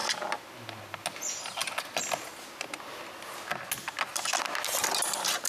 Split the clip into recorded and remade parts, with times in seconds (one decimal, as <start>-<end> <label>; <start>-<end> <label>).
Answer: 0.0-5.5 recorded